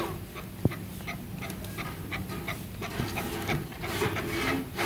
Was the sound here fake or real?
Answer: real